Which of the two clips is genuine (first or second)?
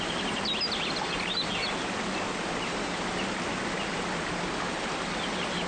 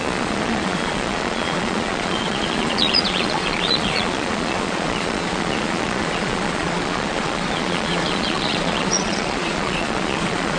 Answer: first